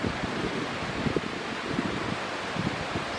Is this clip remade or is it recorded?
recorded